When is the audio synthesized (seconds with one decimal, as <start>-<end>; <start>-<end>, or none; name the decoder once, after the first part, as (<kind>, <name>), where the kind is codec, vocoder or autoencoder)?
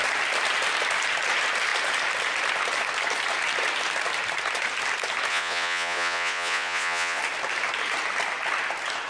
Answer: 5.3-7.2 (vocoder, Vocos)